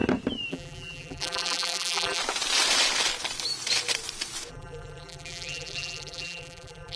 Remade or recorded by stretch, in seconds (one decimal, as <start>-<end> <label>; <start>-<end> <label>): 0.0-0.5 recorded; 0.5-2.2 remade; 2.2-4.5 recorded; 4.5-7.0 remade